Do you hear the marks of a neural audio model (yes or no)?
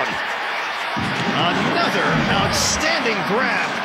yes